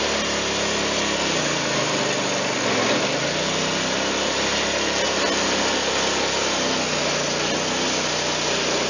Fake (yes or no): no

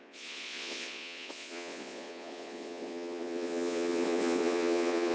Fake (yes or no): yes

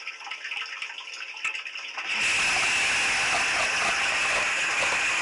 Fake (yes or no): no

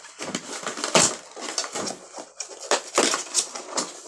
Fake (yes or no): no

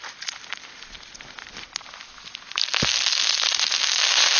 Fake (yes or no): no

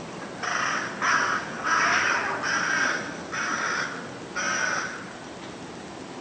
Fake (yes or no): no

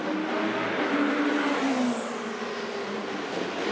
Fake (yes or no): no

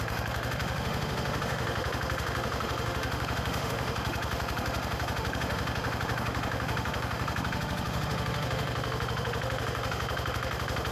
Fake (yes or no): yes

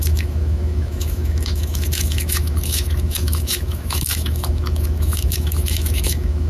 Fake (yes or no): yes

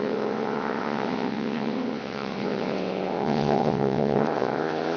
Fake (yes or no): yes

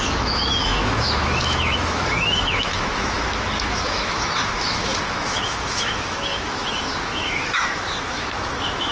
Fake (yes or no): yes